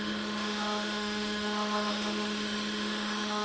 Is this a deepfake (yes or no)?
yes